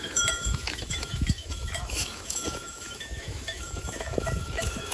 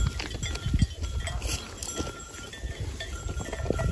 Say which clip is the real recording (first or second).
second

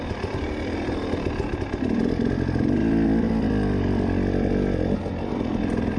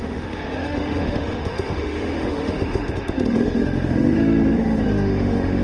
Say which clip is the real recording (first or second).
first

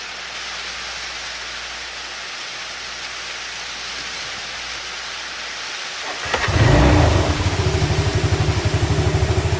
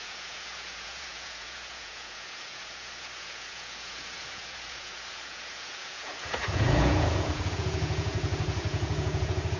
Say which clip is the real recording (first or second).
first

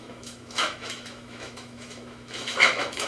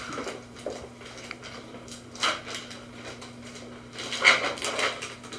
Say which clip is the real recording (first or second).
second